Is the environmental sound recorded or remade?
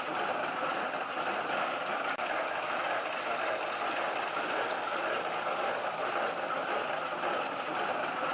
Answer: recorded